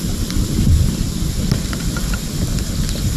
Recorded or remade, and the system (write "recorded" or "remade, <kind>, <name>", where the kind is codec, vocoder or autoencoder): remade, vocoder, BigVGAN v2